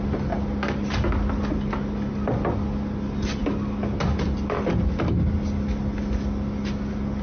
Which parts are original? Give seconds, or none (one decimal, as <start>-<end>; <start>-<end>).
0.0-7.2